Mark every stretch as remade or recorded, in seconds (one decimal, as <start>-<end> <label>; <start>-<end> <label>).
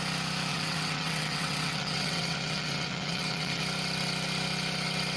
0.0-0.5 recorded; 0.5-3.6 remade; 3.6-5.2 recorded